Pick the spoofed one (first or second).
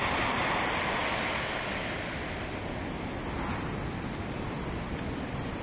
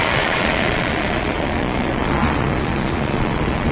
second